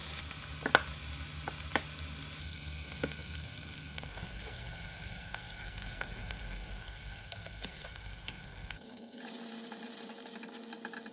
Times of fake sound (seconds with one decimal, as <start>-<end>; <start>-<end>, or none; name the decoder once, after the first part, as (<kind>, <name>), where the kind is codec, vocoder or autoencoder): 2.4-9.2 (codec, SNAC)

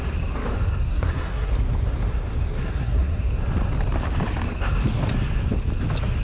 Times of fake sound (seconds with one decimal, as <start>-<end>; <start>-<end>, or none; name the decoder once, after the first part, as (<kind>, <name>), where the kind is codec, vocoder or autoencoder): 0.9-1.5 (codec, SNAC); 2.6-3.2